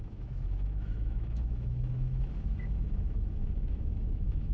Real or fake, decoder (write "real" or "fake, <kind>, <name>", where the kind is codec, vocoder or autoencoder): fake, autoencoder, DAC-VAE